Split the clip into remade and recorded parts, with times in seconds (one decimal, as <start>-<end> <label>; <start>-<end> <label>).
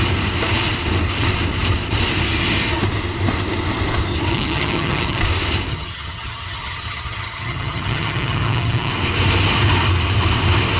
0.0-4.3 recorded; 4.3-5.2 remade; 5.2-5.7 recorded; 5.7-8.9 remade; 8.9-10.8 recorded